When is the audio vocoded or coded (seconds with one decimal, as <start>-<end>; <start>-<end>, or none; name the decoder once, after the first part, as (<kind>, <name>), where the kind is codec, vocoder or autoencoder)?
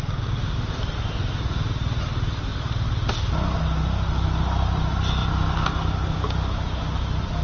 none